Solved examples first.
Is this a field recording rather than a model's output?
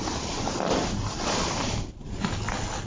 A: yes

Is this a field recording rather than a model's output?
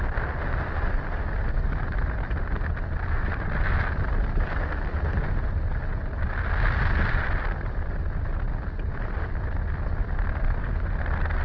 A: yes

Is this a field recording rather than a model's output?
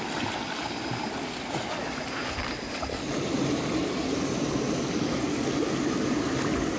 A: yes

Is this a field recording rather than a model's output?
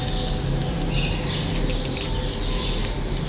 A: yes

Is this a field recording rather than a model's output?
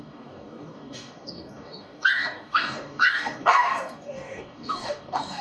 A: no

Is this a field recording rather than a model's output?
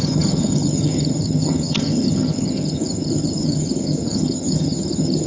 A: no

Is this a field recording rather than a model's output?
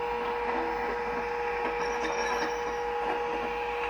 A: yes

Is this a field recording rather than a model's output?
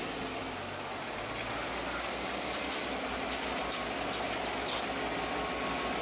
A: yes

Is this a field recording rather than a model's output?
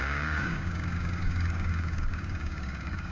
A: no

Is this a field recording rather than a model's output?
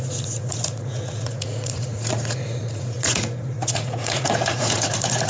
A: no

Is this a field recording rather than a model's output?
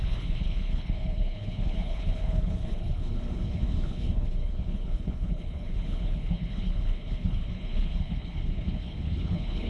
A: no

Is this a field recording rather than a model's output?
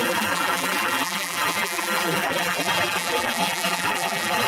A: no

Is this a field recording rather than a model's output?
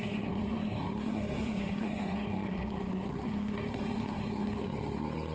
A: no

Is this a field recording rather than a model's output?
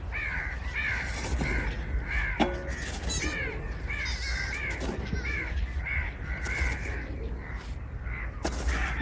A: yes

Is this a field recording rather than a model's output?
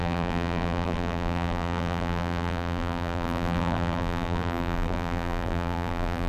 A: no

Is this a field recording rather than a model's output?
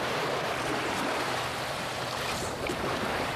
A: no